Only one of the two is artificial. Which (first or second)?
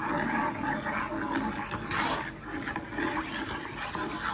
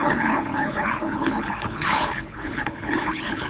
second